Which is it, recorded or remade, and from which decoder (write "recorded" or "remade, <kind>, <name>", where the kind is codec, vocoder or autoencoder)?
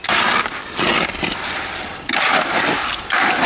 recorded